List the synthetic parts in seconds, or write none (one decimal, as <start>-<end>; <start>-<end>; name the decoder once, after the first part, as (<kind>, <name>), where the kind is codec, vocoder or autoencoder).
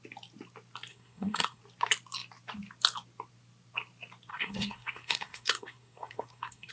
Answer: 0.9-1.6 (codec, SNAC); 4.3-6.7